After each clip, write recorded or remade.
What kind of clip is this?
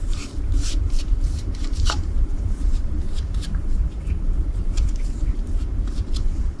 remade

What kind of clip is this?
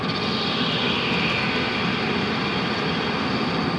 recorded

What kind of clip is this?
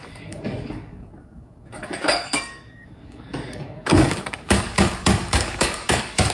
remade